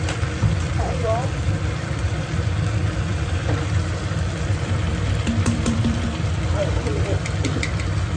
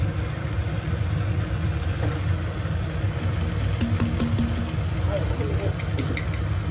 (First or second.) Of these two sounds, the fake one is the first